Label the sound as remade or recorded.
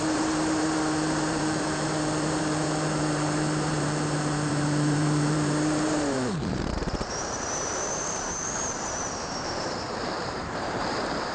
remade